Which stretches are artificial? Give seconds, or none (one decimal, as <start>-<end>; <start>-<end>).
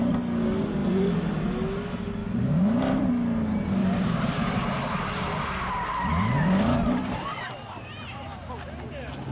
0.8-1.3; 2.2-3.1; 3.8-8.5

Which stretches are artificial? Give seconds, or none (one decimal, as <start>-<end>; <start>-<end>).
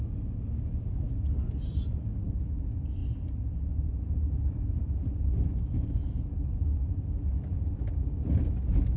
none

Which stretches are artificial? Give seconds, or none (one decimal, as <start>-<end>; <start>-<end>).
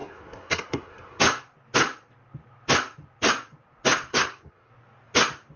0.0-1.2; 4.1-4.7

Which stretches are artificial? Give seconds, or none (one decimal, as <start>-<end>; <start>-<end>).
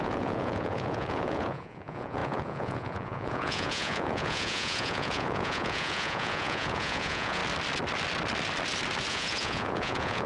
0.0-7.4; 9.1-10.3